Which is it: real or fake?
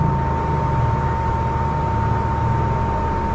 real